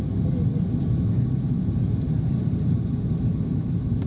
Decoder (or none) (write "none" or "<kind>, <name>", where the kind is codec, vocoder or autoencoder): none